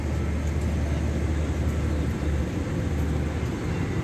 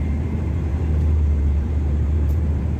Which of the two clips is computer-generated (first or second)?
second